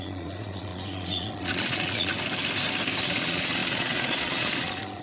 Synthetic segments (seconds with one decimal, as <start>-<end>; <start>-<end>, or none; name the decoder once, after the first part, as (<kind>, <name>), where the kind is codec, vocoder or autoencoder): 0.0-2.1 (vocoder, Vocos); 3.0-5.0